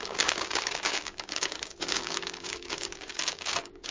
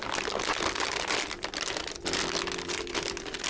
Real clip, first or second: second